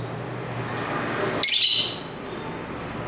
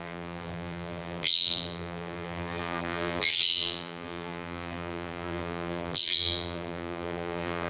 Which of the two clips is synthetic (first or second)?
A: second